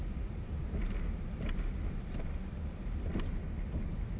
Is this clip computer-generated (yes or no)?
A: yes